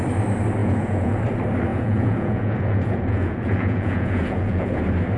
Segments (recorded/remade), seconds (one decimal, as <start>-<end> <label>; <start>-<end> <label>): 0.0-0.6 recorded; 0.6-1.2 remade; 1.2-1.7 recorded; 1.7-4.8 remade; 4.8-5.2 recorded